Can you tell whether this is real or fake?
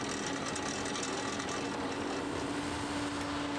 real